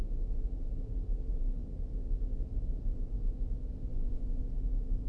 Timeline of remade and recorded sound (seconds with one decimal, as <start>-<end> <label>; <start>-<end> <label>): 0.0-3.9 recorded; 3.9-4.4 remade; 4.4-5.1 recorded